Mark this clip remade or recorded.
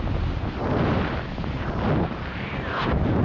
recorded